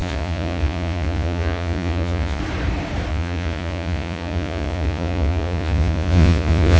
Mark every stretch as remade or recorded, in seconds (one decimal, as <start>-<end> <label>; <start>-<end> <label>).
0.0-2.4 remade; 2.4-3.1 recorded; 3.1-6.8 remade

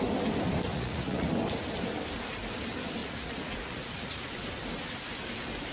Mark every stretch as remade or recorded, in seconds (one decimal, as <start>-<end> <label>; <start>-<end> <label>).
0.0-0.7 recorded; 0.7-1.3 remade; 1.3-3.0 recorded; 3.0-4.4 remade; 4.4-5.7 recorded

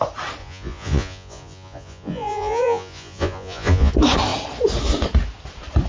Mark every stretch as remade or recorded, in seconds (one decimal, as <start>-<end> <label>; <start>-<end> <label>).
0.0-0.4 recorded; 0.4-3.9 remade; 3.9-5.9 recorded

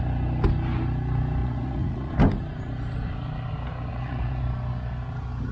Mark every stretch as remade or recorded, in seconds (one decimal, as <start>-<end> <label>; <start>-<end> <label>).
0.0-1.4 recorded; 1.4-2.1 remade; 2.1-3.9 recorded; 3.9-4.4 remade; 4.4-5.5 recorded

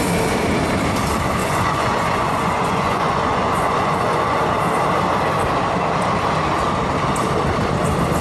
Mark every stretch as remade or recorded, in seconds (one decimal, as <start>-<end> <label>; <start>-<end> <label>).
0.0-1.4 recorded; 1.4-4.5 remade; 4.5-8.2 recorded